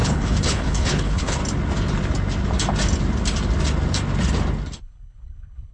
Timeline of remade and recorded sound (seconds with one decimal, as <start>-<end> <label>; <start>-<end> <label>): 0.0-1.4 remade; 1.4-4.8 recorded; 4.8-5.7 remade